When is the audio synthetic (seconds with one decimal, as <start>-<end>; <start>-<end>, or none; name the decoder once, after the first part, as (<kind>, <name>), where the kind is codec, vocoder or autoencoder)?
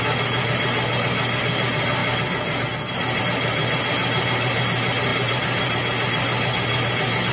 none